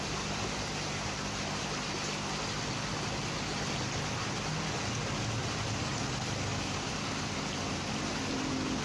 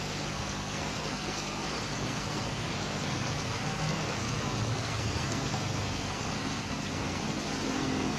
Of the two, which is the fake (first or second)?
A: second